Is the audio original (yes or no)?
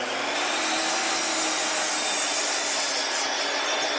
yes